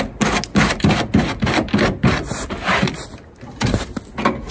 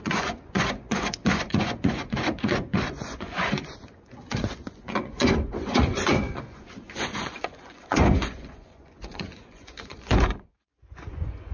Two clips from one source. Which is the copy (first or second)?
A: second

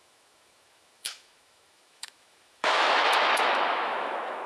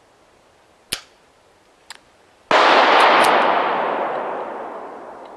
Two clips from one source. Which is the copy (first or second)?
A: first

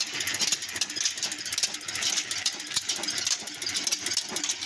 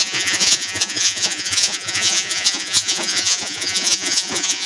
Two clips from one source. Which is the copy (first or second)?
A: second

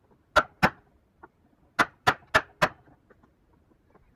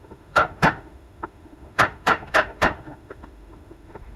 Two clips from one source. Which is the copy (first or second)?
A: second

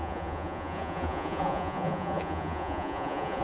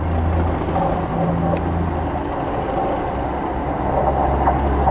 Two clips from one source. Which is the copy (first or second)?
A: first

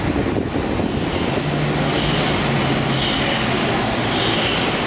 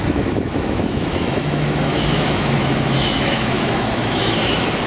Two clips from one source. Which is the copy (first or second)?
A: second